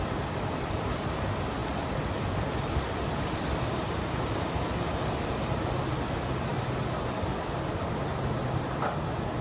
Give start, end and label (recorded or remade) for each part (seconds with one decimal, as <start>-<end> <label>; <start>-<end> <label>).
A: 0.0-9.4 recorded